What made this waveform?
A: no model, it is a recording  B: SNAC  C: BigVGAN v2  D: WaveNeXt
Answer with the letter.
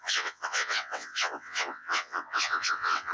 D